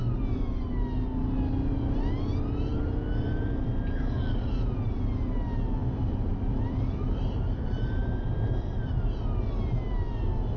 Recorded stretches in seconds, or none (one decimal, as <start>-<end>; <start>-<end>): 0.0-5.8; 8.9-10.6